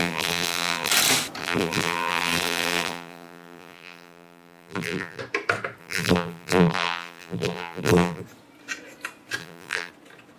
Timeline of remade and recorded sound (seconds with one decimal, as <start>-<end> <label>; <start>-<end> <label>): 0.0-0.9 remade; 0.9-1.4 recorded; 1.4-5.2 remade; 5.2-5.8 recorded; 5.8-8.2 remade; 8.2-9.4 recorded; 9.4-9.9 remade; 9.9-10.4 recorded